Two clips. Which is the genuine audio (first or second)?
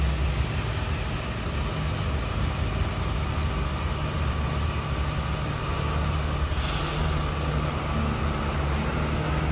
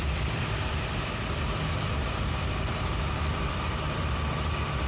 first